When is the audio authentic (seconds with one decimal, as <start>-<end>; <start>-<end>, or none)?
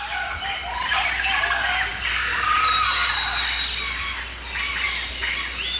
0.0-1.9